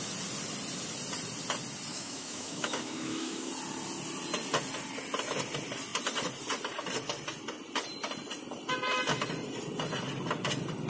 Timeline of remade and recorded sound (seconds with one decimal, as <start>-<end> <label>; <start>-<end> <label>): 0.0-1.9 recorded; 1.9-3.5 remade; 3.5-10.9 recorded